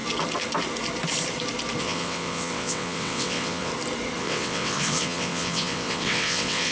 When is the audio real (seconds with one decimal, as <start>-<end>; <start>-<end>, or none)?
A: 0.0-1.8; 3.7-4.2